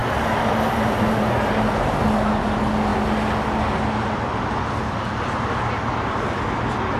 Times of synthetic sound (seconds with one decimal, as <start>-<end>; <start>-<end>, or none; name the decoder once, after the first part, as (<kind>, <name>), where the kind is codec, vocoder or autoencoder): 0.0-1.1 (vocoder, BigVGAN v2)